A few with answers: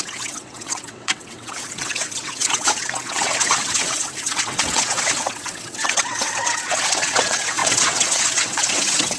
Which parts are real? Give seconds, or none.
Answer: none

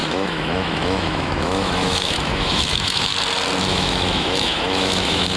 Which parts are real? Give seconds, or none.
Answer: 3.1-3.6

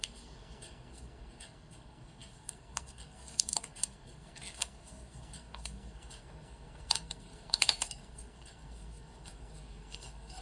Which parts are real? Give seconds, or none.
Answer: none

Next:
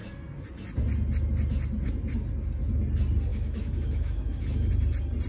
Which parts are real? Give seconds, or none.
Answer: 0.0-3.3; 4.7-5.3

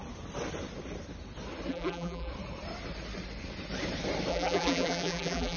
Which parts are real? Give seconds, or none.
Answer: 0.0-1.7; 2.3-4.3

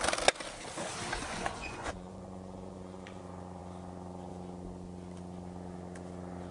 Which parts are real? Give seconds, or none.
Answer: 0.0-1.2; 3.2-6.5

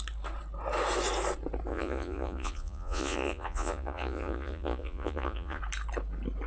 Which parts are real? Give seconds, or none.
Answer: 0.0-1.7; 5.6-6.5

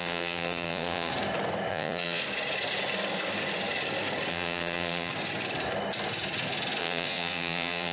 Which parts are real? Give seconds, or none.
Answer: 1.1-1.7; 2.2-4.3; 5.1-6.8